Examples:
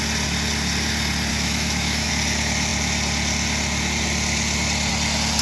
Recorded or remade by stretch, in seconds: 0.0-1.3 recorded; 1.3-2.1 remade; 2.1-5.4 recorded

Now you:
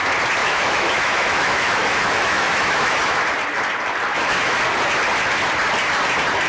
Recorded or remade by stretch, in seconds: 0.0-0.4 recorded; 0.4-3.2 remade; 3.2-4.1 recorded; 4.1-4.6 remade; 4.6-6.5 recorded

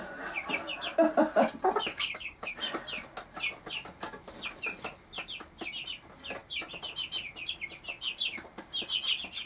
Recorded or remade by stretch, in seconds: 0.0-1.9 recorded; 1.9-2.6 remade; 2.6-9.5 recorded